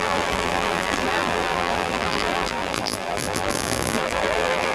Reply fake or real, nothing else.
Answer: fake